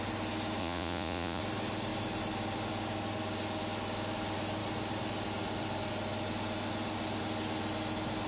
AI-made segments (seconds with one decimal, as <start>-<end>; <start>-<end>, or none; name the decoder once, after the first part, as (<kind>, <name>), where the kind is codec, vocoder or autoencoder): 0.6-1.4 (vocoder, Vocos)